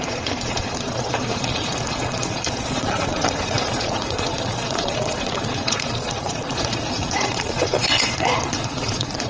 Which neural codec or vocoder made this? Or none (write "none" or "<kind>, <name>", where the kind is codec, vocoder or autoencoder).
vocoder, Vocos